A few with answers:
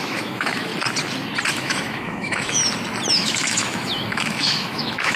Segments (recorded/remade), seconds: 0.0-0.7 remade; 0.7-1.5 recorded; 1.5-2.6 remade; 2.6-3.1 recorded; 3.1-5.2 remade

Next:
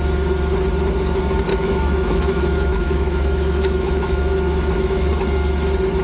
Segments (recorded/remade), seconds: 0.0-1.5 recorded; 1.5-5.1 remade; 5.1-6.0 recorded

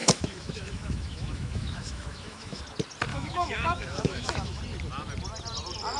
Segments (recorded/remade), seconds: 0.0-2.6 remade; 2.6-3.1 recorded; 3.1-4.6 remade; 4.6-6.0 recorded

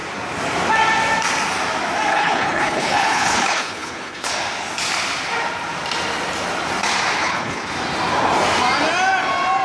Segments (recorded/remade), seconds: 0.0-2.1 recorded; 2.1-4.3 remade; 4.3-7.2 recorded; 7.2-7.7 remade; 7.7-9.6 recorded

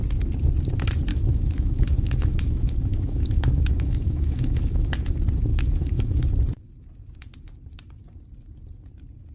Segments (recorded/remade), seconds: 0.0-1.1 recorded; 1.1-4.9 remade; 4.9-5.5 recorded; 5.5-6.2 remade; 6.2-9.3 recorded

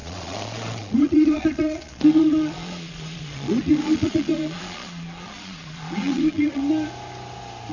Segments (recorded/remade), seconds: 0.0-6.6 remade; 6.6-7.7 recorded